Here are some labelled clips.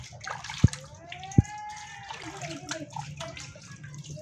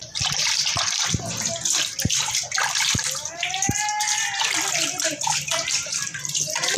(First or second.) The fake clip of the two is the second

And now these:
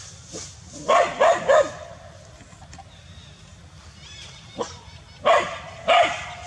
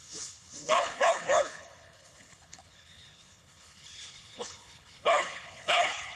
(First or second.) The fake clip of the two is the second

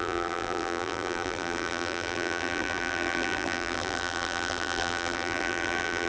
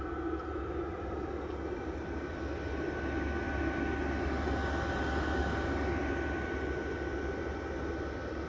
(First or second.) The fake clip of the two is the first